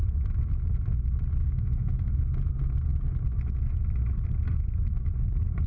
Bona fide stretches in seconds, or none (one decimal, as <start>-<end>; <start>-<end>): 0.0-1.4; 2.2-5.7